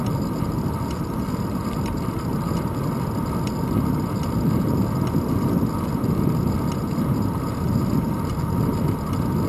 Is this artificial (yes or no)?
no